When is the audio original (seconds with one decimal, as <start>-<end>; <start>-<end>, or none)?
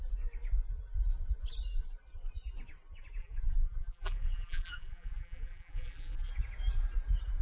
0.0-3.2; 6.3-7.4